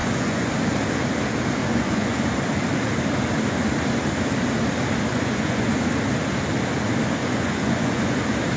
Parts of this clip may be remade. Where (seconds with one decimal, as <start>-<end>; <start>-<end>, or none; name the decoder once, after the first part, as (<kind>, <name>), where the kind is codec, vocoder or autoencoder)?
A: 0.0-0.5 (vocoder, Vocos); 1.6-2.2; 5.1-5.7; 7.2-8.2